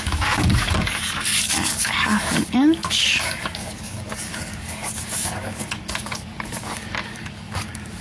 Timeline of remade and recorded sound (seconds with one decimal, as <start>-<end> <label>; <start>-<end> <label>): 0.0-8.0 remade